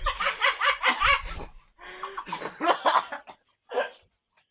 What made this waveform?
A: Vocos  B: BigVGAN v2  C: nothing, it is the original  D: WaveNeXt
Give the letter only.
C